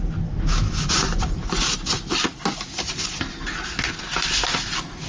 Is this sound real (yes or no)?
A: yes